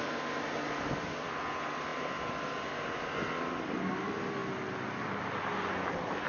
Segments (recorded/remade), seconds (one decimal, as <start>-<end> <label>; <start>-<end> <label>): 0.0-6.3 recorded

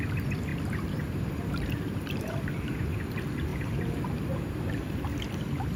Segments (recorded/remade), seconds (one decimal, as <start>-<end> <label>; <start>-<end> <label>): 0.0-0.5 recorded; 0.5-3.1 remade; 3.1-3.5 recorded; 3.5-4.6 remade; 4.6-5.8 recorded

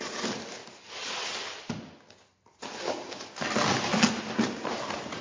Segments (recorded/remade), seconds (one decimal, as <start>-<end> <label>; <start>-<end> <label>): 0.0-5.2 recorded

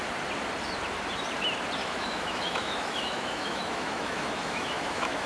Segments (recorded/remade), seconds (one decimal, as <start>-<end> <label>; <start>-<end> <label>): 0.0-1.8 recorded; 1.8-5.3 remade